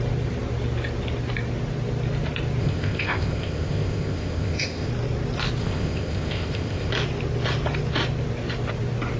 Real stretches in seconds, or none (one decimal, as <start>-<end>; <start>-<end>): 0.0-2.6; 4.9-5.6; 6.9-9.2